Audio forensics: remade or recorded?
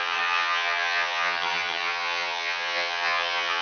remade